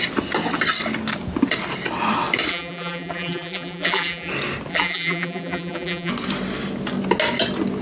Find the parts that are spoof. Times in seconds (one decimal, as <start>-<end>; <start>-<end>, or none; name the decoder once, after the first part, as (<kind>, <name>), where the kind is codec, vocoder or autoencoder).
2.5-4.3 (vocoder, BigVGAN v2); 4.7-6.1